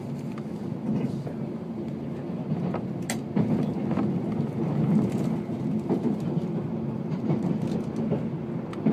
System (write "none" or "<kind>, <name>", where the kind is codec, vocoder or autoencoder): none